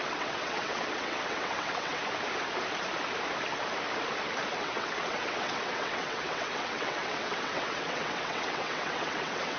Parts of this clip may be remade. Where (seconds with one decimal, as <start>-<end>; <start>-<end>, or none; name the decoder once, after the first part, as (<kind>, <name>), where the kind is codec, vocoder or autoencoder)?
0.0-2.0 (vocoder, WaveNeXt); 4.5-9.6